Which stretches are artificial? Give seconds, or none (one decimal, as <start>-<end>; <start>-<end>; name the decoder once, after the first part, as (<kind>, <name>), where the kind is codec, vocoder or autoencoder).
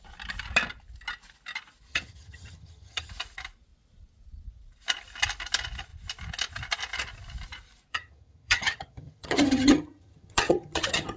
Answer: 1.9-3.1 (vocoder, HiFi-GAN); 7.9-11.2